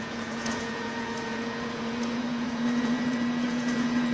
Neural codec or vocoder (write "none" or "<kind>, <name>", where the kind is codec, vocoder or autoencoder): vocoder, Vocos